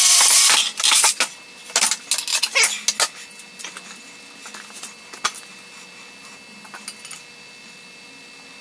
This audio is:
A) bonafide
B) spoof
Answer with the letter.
A